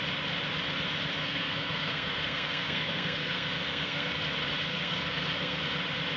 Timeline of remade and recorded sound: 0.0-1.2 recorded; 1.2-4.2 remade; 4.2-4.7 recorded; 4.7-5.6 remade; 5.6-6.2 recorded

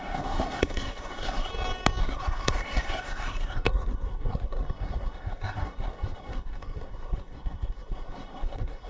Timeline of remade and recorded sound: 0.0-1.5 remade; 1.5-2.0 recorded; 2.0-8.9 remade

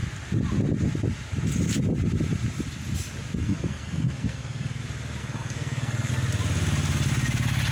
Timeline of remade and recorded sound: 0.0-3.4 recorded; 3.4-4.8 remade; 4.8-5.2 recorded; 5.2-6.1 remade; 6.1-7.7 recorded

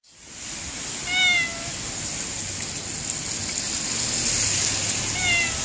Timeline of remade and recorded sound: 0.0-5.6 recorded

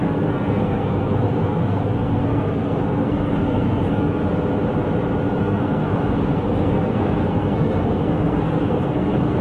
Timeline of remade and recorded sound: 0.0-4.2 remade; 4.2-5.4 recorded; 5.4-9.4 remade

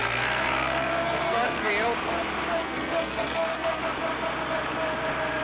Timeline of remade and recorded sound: 0.0-1.7 remade; 1.7-2.6 recorded; 2.6-3.8 remade; 3.8-5.4 recorded